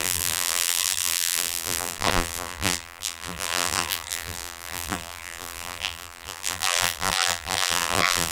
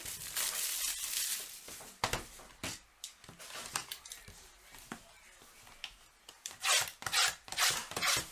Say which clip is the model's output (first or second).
first